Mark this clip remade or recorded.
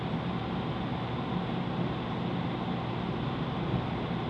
recorded